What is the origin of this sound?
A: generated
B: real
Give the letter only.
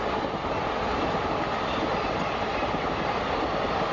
B